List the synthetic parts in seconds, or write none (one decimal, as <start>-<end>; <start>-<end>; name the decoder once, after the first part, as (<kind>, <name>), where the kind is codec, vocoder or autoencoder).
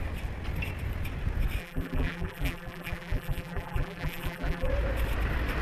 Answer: 1.6-4.7 (vocoder, BigVGAN v2)